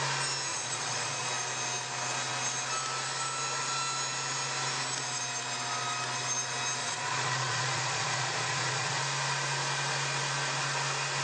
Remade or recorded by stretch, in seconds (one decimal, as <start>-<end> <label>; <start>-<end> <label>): 0.0-0.5 recorded; 0.5-1.3 remade; 1.3-6.8 recorded; 6.8-9.0 remade; 9.0-11.2 recorded